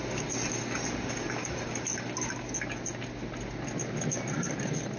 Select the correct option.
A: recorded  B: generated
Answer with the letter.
A